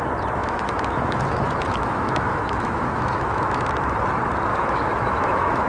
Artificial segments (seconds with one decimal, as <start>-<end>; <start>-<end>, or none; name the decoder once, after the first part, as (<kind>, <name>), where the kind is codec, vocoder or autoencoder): 0.4-3.6 (autoencoder, DAC-VAE); 4.5-5.7